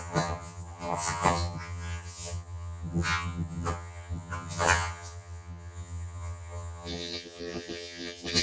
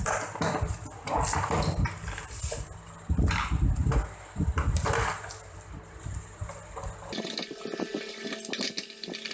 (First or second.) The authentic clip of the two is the second